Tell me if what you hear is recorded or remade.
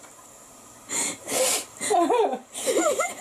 remade